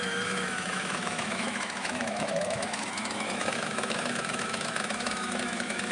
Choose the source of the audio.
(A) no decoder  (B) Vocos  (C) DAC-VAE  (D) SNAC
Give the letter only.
C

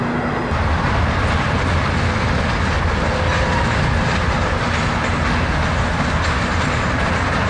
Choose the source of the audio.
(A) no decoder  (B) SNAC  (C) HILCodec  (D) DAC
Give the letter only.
A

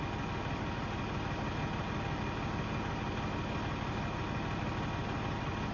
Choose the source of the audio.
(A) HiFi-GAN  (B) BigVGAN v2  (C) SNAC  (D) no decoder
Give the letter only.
D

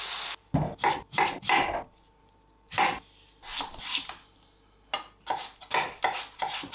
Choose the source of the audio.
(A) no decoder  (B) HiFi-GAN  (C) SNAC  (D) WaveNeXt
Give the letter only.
A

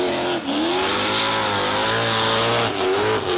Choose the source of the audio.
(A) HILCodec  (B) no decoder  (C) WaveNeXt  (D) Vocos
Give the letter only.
B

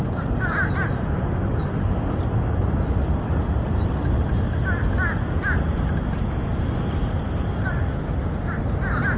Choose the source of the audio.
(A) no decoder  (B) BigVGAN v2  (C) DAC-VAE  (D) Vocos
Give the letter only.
A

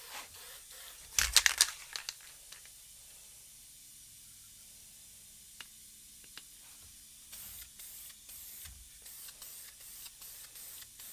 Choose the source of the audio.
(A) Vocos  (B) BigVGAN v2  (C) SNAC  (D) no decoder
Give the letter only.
D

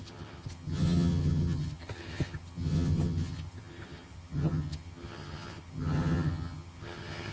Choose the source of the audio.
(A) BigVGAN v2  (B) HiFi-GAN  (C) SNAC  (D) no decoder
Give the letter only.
B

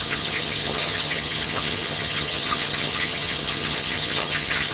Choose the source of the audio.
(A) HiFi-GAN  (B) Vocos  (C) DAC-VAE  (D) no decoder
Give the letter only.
A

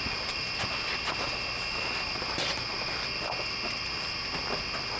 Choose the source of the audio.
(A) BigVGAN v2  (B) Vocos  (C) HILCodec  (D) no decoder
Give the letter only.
D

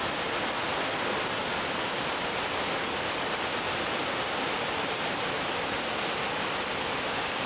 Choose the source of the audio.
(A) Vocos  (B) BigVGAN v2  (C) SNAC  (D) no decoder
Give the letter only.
D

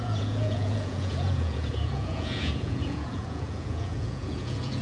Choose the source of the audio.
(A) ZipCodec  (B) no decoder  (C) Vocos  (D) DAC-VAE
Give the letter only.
C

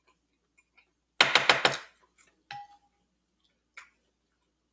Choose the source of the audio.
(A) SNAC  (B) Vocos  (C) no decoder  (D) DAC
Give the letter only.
C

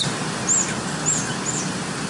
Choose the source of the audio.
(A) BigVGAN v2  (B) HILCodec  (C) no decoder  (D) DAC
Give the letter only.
C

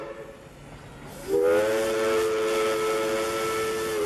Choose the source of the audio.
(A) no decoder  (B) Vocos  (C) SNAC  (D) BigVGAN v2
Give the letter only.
A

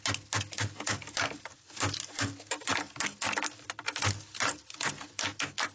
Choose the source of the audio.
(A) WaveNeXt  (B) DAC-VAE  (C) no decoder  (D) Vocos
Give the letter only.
C